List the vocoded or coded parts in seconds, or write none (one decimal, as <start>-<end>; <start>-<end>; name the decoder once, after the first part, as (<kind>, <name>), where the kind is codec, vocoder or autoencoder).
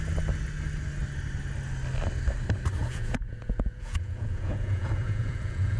2.8-5.8 (vocoder, Vocos)